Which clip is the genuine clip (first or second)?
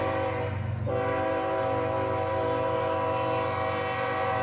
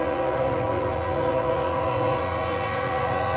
first